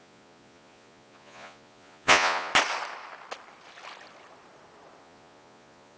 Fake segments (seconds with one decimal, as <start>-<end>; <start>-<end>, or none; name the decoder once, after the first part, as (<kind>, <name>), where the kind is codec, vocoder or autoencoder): 0.0-2.5 (vocoder, Vocos); 5.0-6.0